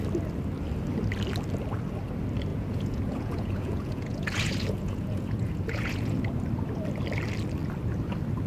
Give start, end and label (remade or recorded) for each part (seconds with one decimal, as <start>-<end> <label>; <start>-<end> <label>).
0.0-2.5 recorded; 2.5-6.2 remade; 6.2-8.5 recorded